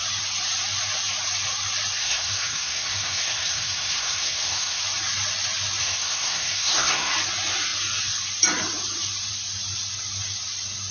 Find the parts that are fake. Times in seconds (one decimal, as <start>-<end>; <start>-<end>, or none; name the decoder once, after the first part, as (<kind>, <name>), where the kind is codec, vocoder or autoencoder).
2.0-4.8 (codec, SNAC); 5.8-7.1